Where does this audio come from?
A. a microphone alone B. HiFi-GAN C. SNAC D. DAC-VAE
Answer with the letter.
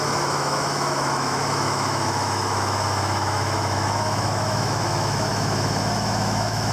D